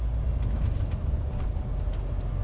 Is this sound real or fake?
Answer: real